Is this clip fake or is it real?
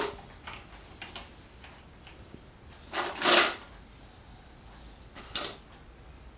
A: real